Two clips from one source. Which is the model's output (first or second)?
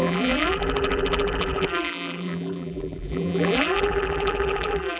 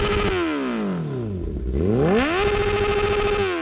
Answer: first